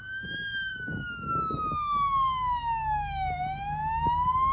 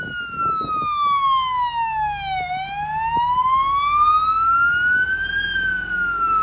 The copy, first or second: first